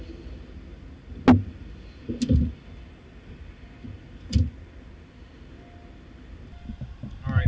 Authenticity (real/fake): real